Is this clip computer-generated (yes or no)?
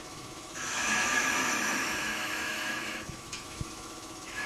yes